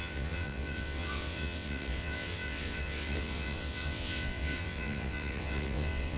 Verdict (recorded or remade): remade